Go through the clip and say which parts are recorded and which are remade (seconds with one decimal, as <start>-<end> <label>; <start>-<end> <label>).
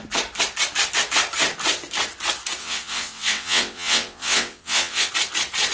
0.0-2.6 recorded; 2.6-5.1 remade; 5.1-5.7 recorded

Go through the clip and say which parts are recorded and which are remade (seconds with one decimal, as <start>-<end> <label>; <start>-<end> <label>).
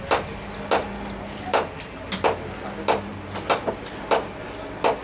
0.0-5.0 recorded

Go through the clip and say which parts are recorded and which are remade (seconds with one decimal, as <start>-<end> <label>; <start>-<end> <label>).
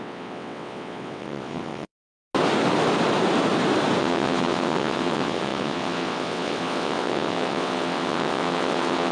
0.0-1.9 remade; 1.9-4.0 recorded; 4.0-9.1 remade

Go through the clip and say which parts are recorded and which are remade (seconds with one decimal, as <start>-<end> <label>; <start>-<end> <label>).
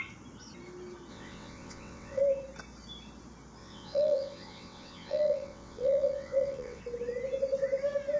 0.0-1.1 recorded; 1.1-2.2 remade; 2.2-3.6 recorded; 3.6-6.8 remade; 6.8-8.2 recorded